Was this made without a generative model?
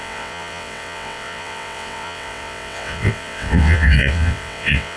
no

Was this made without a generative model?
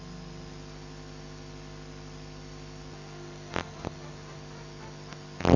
yes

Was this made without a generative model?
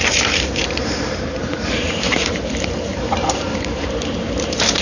no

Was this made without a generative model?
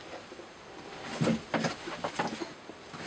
yes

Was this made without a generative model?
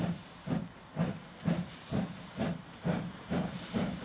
yes